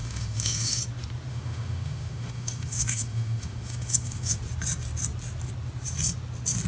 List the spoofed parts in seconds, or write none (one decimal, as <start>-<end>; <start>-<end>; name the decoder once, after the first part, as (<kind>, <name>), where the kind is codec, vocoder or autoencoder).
0.0-0.8 (autoencoder, DAC-VAE); 1.3-4.4